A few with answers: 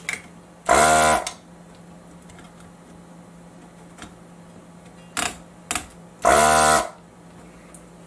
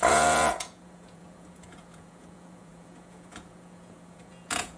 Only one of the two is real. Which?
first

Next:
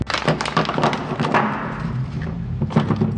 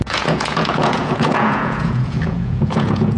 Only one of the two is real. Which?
first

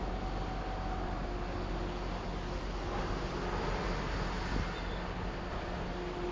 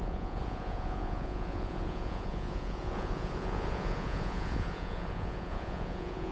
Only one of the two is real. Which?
first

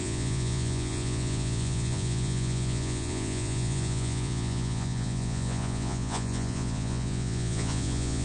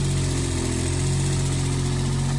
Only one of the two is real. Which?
second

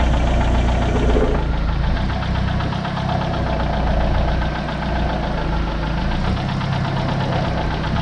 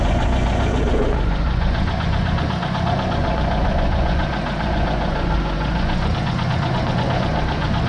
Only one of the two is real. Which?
first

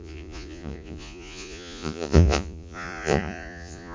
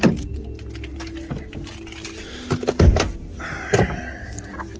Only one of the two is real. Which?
second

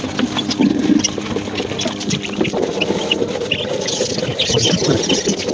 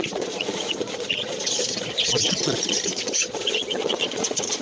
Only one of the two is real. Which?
first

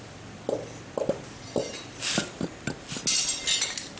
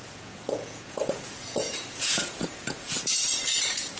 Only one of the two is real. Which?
first